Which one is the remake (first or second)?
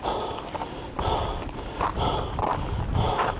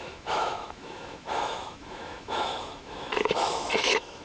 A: second